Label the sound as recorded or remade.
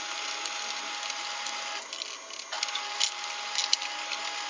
recorded